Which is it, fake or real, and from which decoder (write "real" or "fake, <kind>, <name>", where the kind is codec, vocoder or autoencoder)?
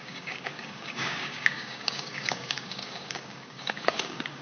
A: fake, codec, DAC